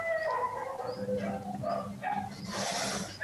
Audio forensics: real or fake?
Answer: real